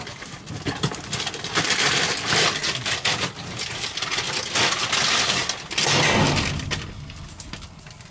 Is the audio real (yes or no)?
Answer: yes